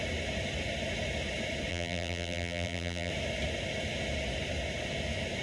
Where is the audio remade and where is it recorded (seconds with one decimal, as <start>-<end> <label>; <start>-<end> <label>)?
0.0-1.7 recorded; 1.7-3.1 remade; 3.1-5.4 recorded